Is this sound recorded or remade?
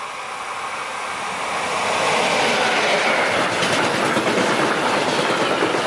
recorded